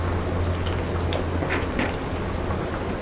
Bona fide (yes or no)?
yes